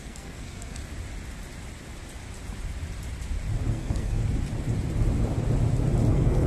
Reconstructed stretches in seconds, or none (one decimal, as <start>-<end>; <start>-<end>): 0.0-0.8; 3.7-4.2; 6.1-6.5